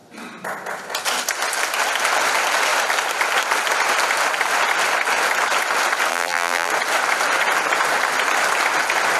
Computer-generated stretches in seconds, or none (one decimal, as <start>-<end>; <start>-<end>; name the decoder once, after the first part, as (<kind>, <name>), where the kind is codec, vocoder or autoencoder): 6.1-6.7 (vocoder, BigVGAN v2)